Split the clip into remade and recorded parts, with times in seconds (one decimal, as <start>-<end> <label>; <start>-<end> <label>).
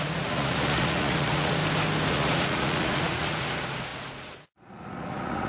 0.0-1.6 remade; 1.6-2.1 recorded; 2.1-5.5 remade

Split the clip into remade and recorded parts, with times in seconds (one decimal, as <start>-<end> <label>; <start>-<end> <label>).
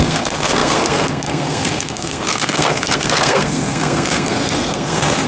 0.0-5.3 remade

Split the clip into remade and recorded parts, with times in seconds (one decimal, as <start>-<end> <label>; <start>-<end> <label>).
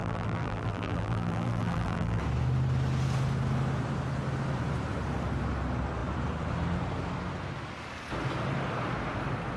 0.0-2.2 remade; 2.2-9.6 recorded